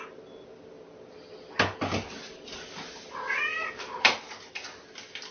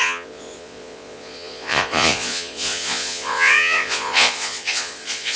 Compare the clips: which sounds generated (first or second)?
second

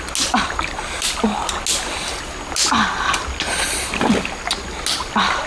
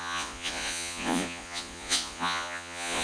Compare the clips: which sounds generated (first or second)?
second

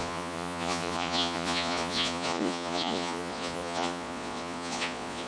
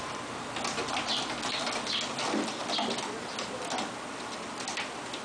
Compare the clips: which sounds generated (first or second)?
first